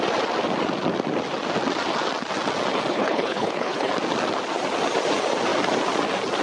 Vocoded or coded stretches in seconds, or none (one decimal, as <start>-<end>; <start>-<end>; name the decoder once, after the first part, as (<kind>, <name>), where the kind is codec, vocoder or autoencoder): 2.9-3.9 (codec, HILCodec)